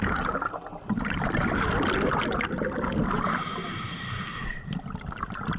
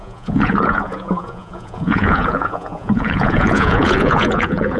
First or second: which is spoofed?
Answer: second